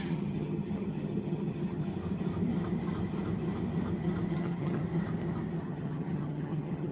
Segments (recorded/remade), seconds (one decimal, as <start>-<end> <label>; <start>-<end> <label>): 0.0-1.9 remade; 1.9-4.3 recorded; 4.3-4.8 remade; 4.8-5.6 recorded; 5.6-6.9 remade

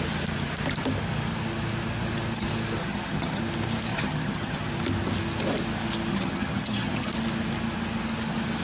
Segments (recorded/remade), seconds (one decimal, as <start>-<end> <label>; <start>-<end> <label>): 0.0-2.8 recorded; 2.8-3.4 remade; 3.4-3.9 recorded; 3.9-4.7 remade; 4.7-6.1 recorded; 6.1-7.1 remade; 7.1-8.6 recorded